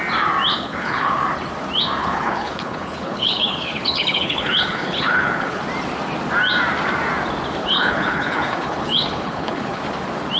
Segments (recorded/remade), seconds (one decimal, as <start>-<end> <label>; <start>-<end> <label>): 0.0-0.5 recorded; 0.5-1.2 remade; 1.2-2.0 recorded; 2.0-5.6 remade; 5.6-7.6 recorded; 7.6-9.8 remade; 9.8-10.4 recorded